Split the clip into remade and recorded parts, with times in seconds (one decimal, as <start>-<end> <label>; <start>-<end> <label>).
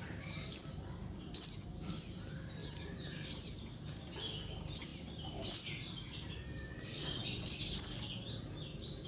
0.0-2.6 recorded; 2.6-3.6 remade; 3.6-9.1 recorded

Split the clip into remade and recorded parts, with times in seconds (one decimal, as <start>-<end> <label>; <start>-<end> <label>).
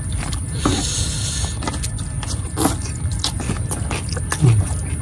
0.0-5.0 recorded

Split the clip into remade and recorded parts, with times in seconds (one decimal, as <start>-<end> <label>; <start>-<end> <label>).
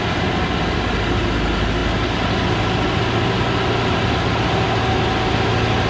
0.0-5.9 recorded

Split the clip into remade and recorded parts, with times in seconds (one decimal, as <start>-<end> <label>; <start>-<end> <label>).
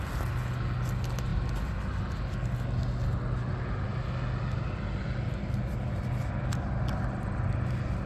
0.0-8.1 recorded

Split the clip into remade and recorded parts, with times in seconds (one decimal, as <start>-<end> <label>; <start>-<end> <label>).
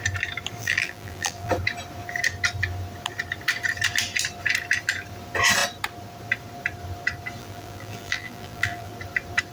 0.0-0.6 recorded; 0.6-1.5 remade; 1.5-7.4 recorded; 7.4-8.9 remade; 8.9-9.5 recorded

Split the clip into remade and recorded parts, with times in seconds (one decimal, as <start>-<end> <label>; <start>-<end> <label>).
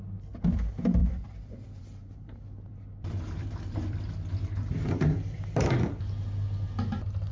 0.0-1.0 recorded; 1.0-5.4 remade; 5.4-7.3 recorded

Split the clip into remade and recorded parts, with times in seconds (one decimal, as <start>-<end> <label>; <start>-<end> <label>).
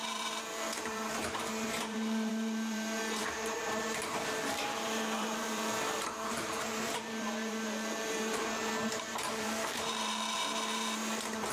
0.0-11.5 remade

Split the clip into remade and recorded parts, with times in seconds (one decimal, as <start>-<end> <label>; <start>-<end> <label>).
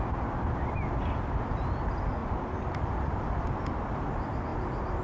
0.0-2.2 recorded; 2.2-4.1 remade; 4.1-4.5 recorded; 4.5-5.0 remade